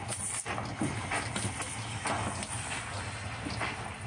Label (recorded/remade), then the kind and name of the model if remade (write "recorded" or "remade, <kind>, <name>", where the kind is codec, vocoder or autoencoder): recorded